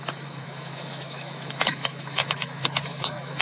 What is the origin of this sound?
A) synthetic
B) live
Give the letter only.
A